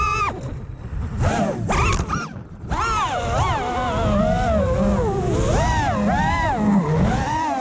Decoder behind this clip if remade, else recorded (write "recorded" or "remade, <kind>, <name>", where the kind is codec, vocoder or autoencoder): recorded